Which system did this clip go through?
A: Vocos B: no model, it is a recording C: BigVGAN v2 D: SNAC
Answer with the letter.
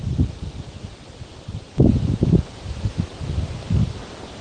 B